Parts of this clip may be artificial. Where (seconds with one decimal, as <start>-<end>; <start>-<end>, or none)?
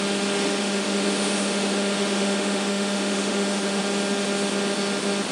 0.6-3.8